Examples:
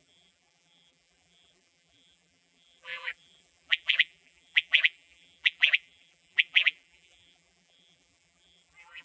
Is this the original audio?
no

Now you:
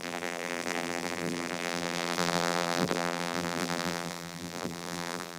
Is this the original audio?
no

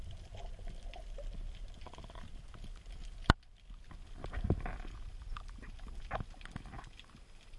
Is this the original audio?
yes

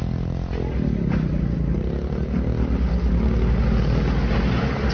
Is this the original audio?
yes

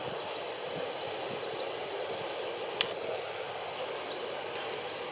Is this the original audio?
yes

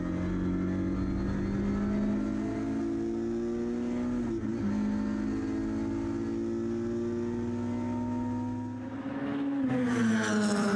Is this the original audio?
yes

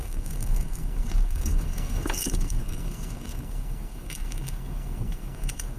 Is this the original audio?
no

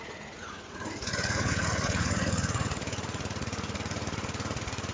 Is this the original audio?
no